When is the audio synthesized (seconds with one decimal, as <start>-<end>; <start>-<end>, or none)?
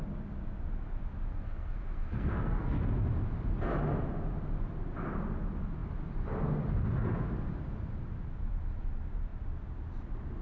1.3-2.8